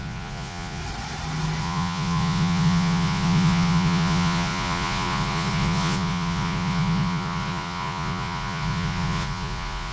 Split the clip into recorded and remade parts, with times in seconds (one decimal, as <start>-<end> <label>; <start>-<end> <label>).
0.0-0.8 remade; 0.8-1.6 recorded; 1.6-9.9 remade